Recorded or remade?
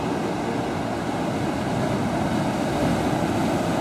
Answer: recorded